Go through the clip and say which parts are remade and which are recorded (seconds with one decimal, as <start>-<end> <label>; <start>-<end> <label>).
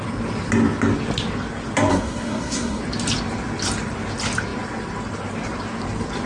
0.0-1.9 recorded; 1.9-2.8 remade; 2.8-6.3 recorded